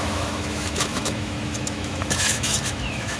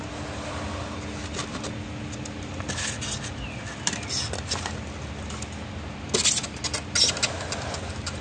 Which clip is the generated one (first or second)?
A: first